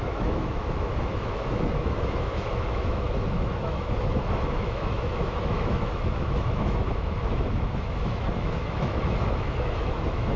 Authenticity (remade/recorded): remade